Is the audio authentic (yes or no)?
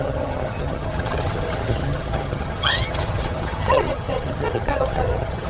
no